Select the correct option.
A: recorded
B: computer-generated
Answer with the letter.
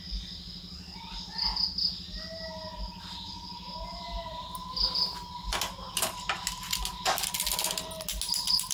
A